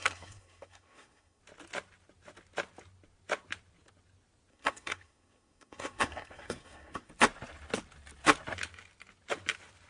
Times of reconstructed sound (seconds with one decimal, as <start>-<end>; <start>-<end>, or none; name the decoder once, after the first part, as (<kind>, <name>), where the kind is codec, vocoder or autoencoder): 0.0-1.4 (codec, SNAC); 4.5-7.1